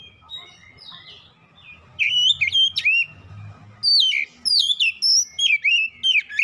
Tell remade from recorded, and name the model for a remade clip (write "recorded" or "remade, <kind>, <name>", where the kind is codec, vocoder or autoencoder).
recorded